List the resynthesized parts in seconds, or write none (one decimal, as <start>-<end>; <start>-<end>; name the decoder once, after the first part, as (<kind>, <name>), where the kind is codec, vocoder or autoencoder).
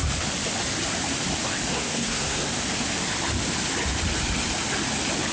1.7-2.5 (codec, SNAC)